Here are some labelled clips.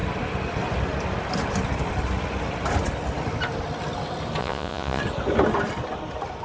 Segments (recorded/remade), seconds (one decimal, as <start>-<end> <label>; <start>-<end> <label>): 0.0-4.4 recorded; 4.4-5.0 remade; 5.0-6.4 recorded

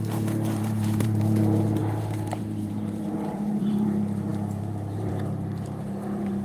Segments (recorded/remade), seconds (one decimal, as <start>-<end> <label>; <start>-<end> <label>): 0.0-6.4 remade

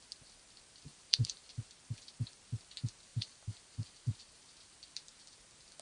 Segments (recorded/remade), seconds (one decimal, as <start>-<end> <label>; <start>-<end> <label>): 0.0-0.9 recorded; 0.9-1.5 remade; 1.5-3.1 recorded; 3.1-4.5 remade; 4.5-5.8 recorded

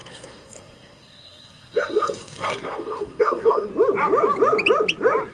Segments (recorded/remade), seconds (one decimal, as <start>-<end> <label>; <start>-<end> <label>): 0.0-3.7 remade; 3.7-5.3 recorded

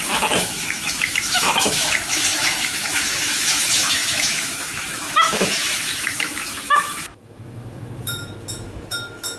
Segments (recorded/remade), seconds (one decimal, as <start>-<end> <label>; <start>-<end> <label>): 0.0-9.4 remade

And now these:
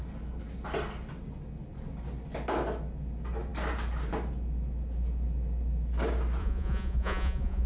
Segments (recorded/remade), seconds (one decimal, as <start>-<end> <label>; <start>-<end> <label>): 0.0-6.4 recorded; 6.4-7.7 remade

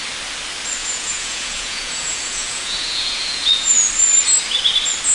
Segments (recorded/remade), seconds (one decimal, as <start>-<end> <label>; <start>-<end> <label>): 0.0-0.8 recorded; 0.8-3.9 remade; 3.9-5.1 recorded

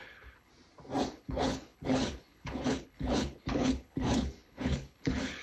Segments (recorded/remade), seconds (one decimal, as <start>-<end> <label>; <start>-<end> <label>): 0.0-0.5 remade; 0.5-1.1 recorded; 1.1-5.4 remade